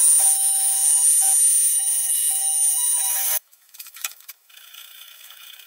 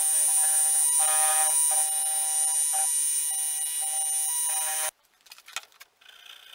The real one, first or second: second